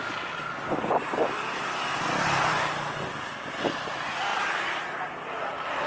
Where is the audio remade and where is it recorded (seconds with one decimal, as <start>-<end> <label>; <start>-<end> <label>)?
0.0-5.9 recorded

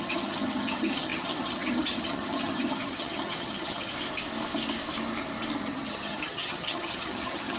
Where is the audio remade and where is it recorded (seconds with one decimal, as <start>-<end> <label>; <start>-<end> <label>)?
0.0-3.9 remade; 3.9-5.6 recorded; 5.6-7.6 remade

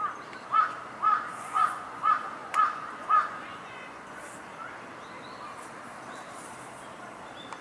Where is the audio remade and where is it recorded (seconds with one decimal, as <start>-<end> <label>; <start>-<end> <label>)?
0.0-1.1 recorded; 1.1-2.0 remade; 2.0-2.4 recorded; 2.4-4.2 remade; 4.2-7.6 recorded

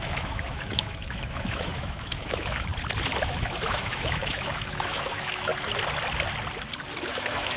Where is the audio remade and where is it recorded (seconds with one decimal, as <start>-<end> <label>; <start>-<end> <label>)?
0.0-2.7 remade; 2.7-3.2 recorded; 3.2-5.5 remade; 5.5-7.1 recorded; 7.1-7.6 remade

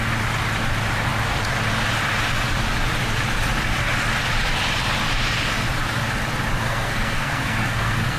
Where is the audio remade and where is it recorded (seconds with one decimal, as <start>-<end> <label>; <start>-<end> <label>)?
0.0-6.6 recorded; 6.6-8.2 remade

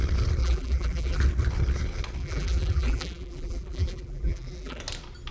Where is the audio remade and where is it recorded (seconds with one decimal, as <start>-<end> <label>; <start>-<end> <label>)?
0.0-0.4 recorded; 0.4-1.2 remade; 1.2-2.2 recorded; 2.2-4.8 remade; 4.8-5.3 recorded